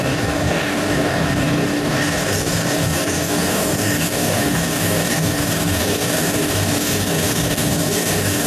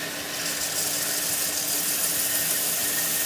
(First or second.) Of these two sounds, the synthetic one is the first